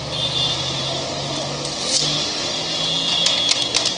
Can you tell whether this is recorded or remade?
recorded